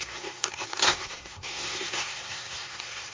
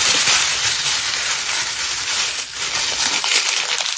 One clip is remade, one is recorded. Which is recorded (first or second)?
second